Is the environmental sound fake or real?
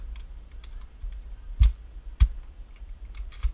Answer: real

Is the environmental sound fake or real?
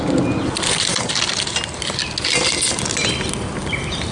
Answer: real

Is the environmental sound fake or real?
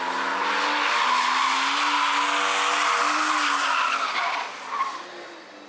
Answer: real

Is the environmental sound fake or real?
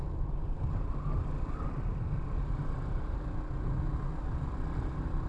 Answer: real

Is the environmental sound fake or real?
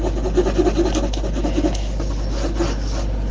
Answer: real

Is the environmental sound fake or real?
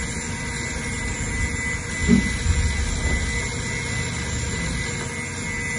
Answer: real